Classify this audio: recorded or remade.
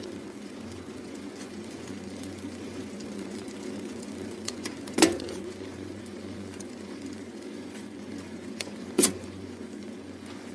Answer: remade